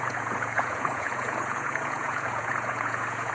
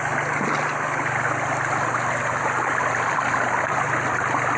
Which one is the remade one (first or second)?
first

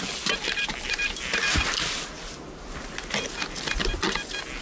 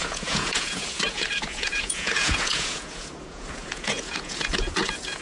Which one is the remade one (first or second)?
second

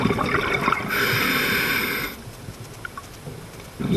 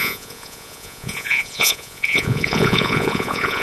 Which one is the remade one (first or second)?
second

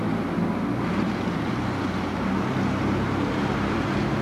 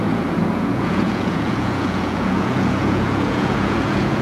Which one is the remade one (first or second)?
second